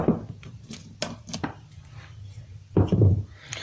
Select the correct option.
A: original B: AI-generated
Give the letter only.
B